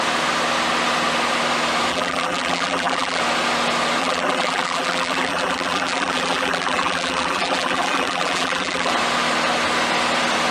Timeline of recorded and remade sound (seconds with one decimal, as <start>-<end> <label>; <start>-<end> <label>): 0.0-1.9 recorded; 1.9-3.2 remade; 3.2-4.0 recorded; 4.0-8.9 remade; 8.9-10.5 recorded

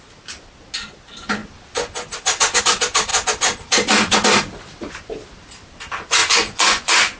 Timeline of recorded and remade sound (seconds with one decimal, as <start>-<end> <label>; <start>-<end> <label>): 0.0-6.2 recorded; 6.2-7.2 remade

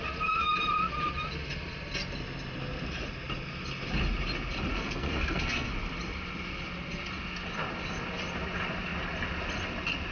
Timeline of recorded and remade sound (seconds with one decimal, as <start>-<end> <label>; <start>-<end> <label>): 0.0-4.7 recorded; 4.7-5.7 remade; 5.7-10.1 recorded

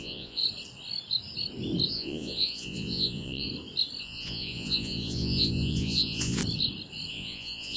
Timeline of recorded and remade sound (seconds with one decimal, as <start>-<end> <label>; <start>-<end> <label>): 0.0-0.4 remade; 0.4-1.9 recorded; 1.9-3.5 remade; 3.5-4.0 recorded; 4.0-6.4 remade; 6.4-7.1 recorded; 7.1-7.8 remade

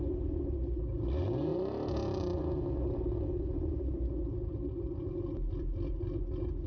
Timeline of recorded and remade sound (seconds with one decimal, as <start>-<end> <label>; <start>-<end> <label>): 0.0-6.7 recorded